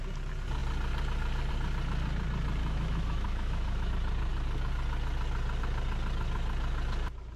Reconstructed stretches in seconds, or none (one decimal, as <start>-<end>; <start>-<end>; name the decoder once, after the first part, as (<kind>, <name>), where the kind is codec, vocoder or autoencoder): 2.6-3.9 (autoencoder, DAC-VAE)